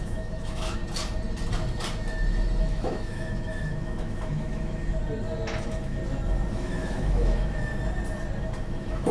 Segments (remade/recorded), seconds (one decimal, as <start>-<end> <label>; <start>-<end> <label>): 0.0-0.8 remade; 0.8-2.6 recorded; 2.6-5.0 remade; 5.0-5.6 recorded; 5.6-6.0 remade; 6.0-6.5 recorded; 6.5-7.7 remade; 7.7-8.6 recorded; 8.6-9.1 remade